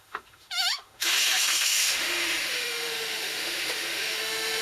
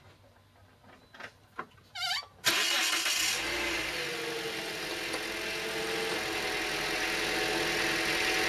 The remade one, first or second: first